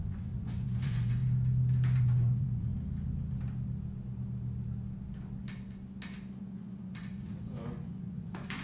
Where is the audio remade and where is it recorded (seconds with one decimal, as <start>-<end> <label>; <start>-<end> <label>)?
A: 0.0-1.2 remade; 1.2-2.0 recorded; 2.0-2.7 remade; 2.7-6.4 recorded; 6.4-8.6 remade